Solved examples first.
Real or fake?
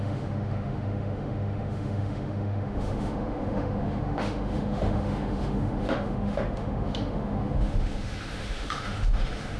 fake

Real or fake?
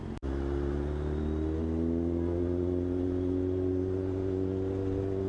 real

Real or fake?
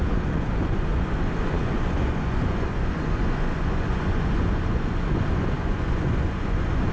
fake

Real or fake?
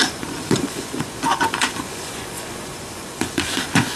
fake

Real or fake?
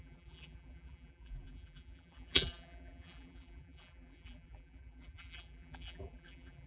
fake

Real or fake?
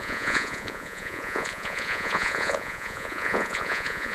fake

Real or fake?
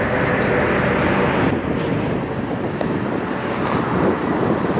real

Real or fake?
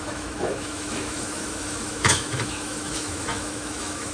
fake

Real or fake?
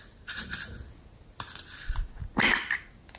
real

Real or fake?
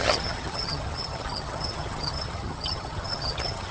fake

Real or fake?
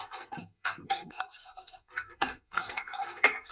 fake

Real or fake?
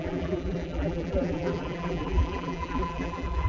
fake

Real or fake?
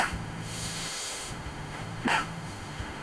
fake